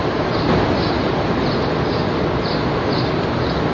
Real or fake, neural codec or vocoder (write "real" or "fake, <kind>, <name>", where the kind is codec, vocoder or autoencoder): real